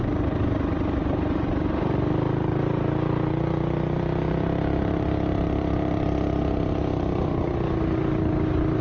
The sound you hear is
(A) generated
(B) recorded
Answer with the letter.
B